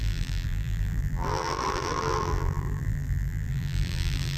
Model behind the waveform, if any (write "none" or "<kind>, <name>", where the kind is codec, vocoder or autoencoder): vocoder, BigVGAN v2